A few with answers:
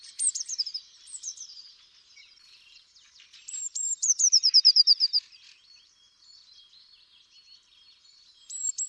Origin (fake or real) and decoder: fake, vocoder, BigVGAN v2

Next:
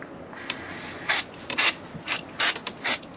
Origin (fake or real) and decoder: real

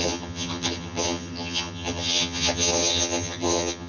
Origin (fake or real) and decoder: fake, vocoder, HiFi-GAN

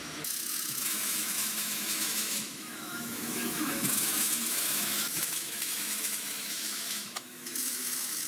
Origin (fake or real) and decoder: fake, autoencoder, DAC-VAE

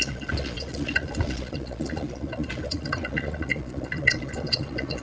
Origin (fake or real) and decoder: fake, vocoder, Vocos